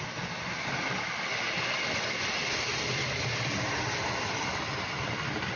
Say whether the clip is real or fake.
real